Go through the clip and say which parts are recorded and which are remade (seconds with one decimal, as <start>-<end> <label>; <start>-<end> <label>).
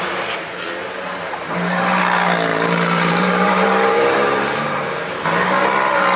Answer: 0.0-0.8 recorded; 0.8-2.0 remade; 2.0-2.5 recorded; 2.5-5.2 remade; 5.2-6.2 recorded